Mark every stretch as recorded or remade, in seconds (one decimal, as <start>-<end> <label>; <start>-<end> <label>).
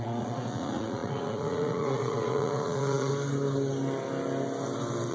0.0-3.1 remade; 3.1-5.1 recorded